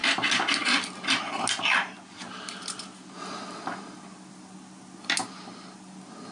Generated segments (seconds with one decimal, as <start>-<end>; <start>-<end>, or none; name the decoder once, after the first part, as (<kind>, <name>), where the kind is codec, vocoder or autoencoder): none